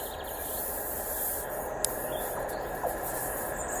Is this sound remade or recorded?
recorded